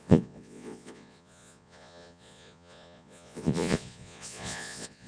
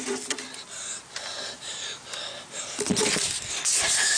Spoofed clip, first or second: first